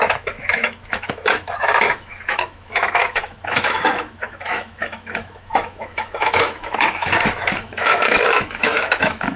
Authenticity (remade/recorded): remade